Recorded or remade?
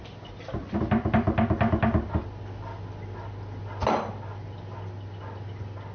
recorded